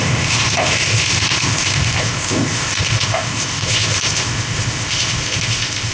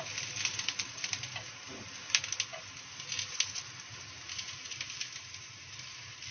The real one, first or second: second